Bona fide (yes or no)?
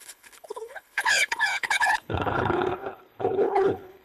no